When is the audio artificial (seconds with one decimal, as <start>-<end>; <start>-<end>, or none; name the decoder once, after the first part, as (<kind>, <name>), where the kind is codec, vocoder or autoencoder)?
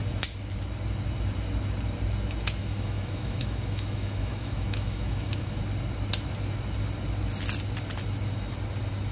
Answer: 2.6-5.6 (autoencoder, DAC-VAE)